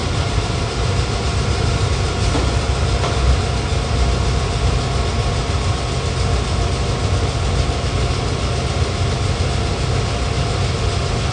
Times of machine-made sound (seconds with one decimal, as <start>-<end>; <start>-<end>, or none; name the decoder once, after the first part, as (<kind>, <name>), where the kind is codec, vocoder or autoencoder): 0.0-1.9 (vocoder, BigVGAN v2)

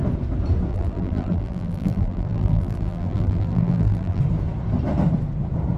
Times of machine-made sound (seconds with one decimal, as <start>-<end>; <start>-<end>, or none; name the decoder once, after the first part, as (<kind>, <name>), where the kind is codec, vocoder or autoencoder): 0.7-4.2 (vocoder, BigVGAN v2)

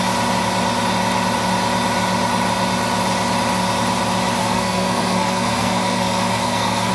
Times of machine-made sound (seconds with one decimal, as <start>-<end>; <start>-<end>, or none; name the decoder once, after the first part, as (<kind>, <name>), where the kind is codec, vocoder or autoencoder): 4.4-6.9 (codec, SNAC)

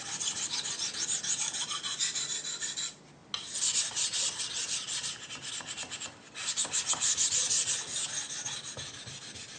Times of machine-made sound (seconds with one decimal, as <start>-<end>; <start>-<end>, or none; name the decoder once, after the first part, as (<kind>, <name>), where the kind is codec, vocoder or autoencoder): none

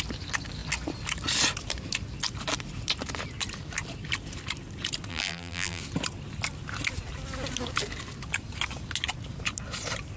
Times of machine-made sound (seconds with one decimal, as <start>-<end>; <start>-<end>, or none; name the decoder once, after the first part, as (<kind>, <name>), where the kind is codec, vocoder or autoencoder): 5.1-5.8 (vocoder, BigVGAN v2)

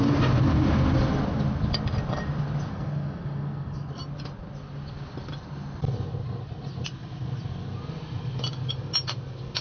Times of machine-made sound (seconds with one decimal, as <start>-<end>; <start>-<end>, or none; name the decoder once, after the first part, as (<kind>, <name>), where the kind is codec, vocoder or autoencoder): 2.7-4.0 (codec, SNAC)

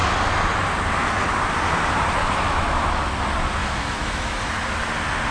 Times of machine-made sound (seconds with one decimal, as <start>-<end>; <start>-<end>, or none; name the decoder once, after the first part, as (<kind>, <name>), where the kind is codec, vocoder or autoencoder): 2.2-3.1 (autoencoder, DAC-VAE); 3.6-4.4